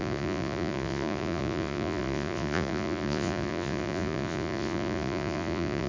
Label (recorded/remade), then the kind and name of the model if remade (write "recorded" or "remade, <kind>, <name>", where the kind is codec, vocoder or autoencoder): remade, vocoder, Vocos